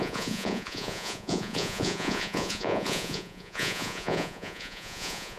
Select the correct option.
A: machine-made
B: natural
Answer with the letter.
A